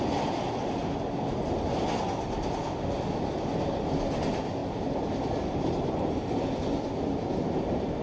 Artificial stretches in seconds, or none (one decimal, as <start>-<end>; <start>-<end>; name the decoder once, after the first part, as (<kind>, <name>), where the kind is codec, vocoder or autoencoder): 4.6-6.3 (vocoder, BigVGAN v2)